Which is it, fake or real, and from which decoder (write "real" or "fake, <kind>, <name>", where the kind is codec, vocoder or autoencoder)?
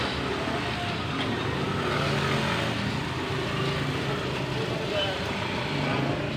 real